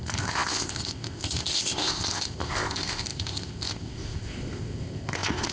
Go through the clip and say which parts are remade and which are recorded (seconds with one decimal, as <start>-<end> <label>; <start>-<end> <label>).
0.0-5.5 remade